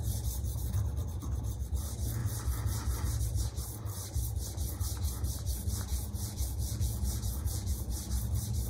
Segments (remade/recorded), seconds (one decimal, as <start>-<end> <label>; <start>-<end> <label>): 0.0-5.9 recorded; 5.9-7.9 remade; 7.9-8.7 recorded